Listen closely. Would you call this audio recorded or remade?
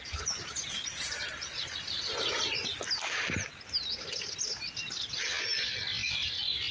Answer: recorded